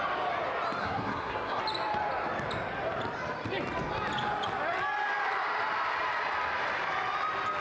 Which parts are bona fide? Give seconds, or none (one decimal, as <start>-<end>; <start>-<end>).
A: 0.0-0.8; 1.6-7.6

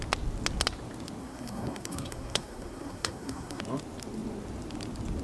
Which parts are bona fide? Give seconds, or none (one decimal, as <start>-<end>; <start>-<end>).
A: 0.0-1.2; 3.6-5.2

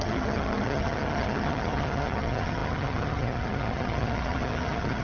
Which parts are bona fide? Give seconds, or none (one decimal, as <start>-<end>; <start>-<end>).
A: none

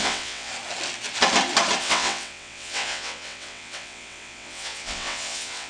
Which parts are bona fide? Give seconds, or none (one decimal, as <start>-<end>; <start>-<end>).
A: 0.5-1.8

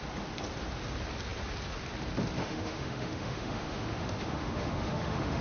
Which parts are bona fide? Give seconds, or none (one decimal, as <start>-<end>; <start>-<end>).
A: 0.0-2.4

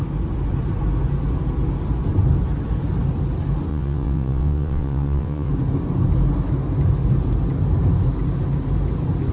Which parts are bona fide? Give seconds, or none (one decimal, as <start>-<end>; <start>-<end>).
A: 0.0-3.7; 5.5-9.3

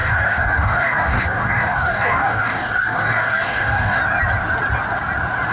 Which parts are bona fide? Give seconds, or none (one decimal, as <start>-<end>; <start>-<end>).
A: 4.0-5.5

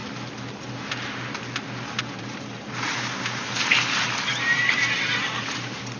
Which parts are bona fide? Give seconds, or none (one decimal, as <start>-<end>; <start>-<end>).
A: 0.0-2.1